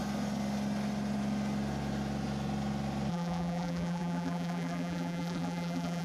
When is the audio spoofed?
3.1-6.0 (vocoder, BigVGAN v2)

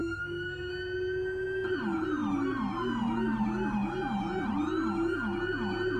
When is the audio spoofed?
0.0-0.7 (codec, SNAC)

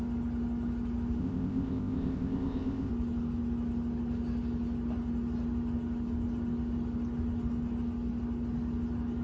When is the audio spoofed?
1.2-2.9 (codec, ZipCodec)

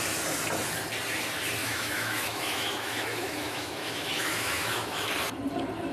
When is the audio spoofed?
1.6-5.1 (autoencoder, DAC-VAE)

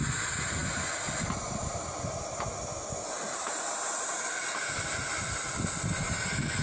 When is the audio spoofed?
none